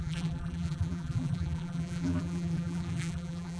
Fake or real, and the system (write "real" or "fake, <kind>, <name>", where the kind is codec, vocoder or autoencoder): fake, vocoder, BigVGAN v2